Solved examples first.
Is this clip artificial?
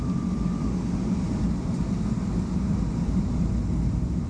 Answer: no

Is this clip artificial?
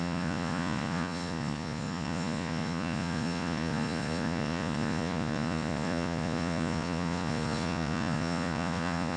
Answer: yes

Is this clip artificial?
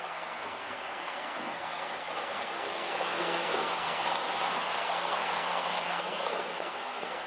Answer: yes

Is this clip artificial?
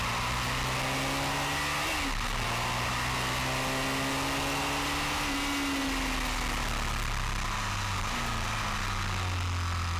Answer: no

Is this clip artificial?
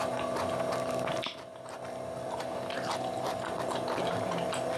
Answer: no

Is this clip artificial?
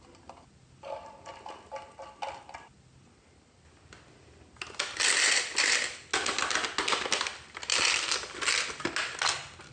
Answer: no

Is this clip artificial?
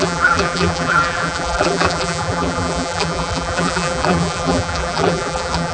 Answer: yes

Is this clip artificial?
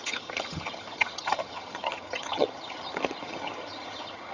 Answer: yes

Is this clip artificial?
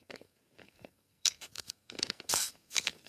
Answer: yes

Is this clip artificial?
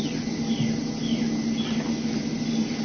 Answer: no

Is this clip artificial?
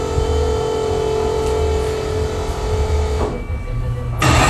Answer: no